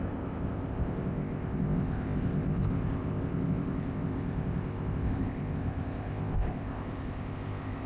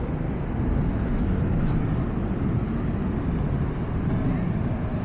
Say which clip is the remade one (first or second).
first